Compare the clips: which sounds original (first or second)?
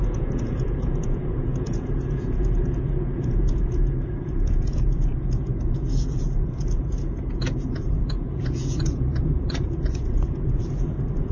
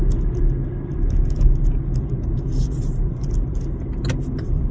second